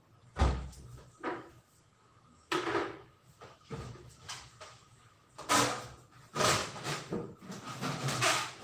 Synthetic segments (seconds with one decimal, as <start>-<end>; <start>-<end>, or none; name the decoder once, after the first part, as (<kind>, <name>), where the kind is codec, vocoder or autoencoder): 0.4-5.3 (autoencoder, DAC-VAE)